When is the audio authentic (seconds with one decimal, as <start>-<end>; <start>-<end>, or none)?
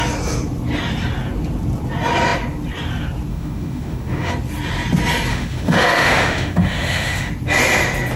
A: 0.0-3.3; 4.3-5.3; 7.3-8.2